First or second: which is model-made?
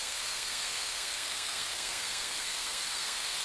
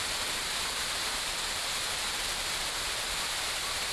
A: first